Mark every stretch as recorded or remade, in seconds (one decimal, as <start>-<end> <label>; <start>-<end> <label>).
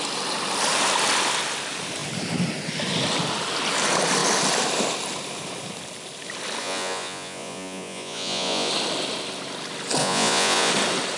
0.0-6.6 recorded; 6.6-8.7 remade; 8.7-10.0 recorded; 10.0-10.7 remade; 10.7-11.2 recorded